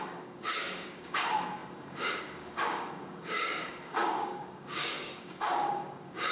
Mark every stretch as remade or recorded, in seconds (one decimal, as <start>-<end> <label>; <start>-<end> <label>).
0.0-6.3 remade